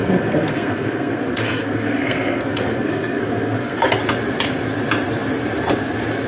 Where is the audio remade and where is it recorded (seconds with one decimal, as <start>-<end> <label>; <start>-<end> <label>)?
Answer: 0.0-3.8 remade; 3.8-6.3 recorded